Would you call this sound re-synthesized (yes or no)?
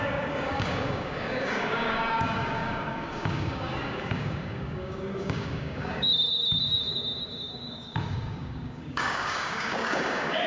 yes